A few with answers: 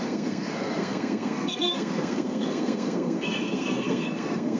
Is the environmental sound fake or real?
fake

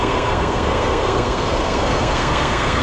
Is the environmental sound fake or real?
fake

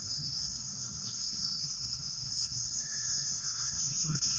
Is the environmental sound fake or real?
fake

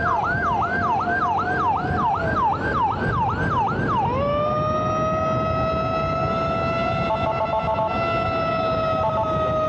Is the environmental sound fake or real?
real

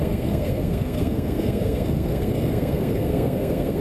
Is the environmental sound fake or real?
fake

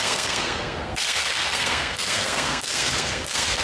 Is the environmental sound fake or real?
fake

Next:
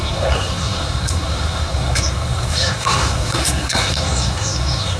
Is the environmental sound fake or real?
fake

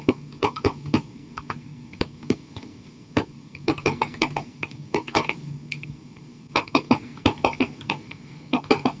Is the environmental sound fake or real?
fake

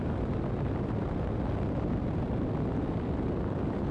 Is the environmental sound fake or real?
real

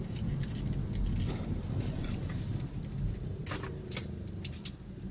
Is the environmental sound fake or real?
real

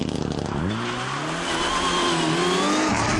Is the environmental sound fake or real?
real